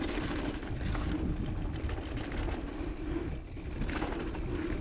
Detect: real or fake real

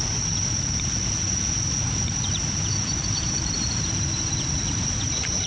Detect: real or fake real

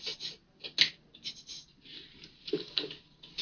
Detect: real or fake real